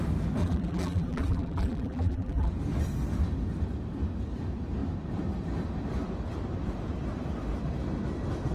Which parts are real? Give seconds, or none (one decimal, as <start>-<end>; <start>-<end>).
0.0-0.4; 2.5-8.5